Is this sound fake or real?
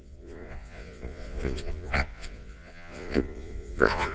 fake